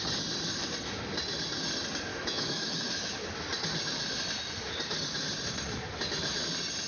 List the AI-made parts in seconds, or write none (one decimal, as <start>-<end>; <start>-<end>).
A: 2.1-3.3